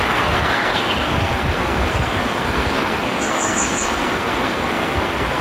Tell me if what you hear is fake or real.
fake